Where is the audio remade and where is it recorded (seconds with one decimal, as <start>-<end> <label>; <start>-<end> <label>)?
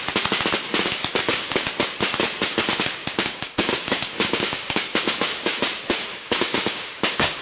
0.0-1.1 recorded; 1.1-1.7 remade; 1.7-3.0 recorded; 3.0-5.6 remade; 5.6-6.1 recorded; 6.1-7.4 remade